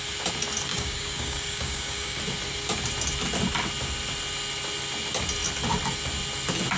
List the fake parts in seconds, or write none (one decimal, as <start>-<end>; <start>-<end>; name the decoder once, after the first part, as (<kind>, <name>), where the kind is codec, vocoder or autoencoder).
0.7-2.2 (codec, DAC)